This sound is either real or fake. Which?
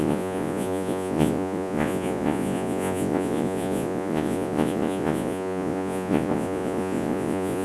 fake